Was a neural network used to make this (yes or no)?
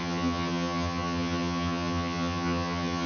yes